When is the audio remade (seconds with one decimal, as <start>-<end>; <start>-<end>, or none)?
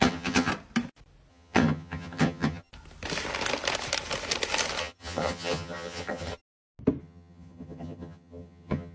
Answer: 0.0-0.5; 1.3-2.7; 4.8-6.4; 7.0-8.9